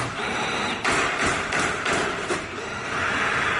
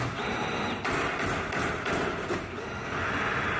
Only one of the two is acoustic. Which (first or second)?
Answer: second